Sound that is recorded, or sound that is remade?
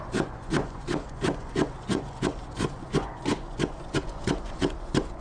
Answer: remade